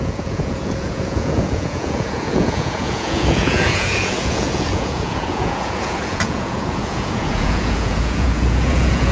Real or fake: fake